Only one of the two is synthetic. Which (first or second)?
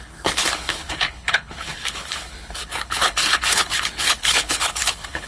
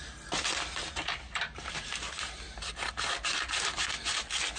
first